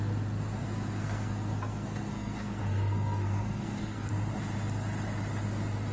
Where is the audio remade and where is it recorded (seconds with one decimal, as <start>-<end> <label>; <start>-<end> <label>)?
0.0-0.6 recorded; 0.6-4.1 remade; 4.1-5.9 recorded